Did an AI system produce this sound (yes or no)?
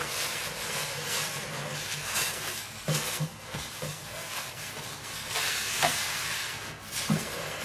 yes